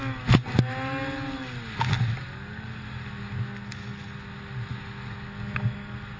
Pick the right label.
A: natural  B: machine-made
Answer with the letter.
A